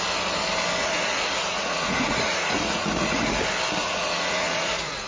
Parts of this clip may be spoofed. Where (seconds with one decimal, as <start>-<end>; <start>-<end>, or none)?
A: 0.8-3.4; 3.8-5.1